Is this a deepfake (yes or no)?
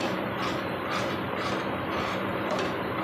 yes